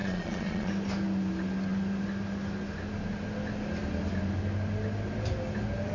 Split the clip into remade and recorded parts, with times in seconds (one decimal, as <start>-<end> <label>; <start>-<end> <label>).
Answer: 0.0-0.7 remade; 0.7-5.9 recorded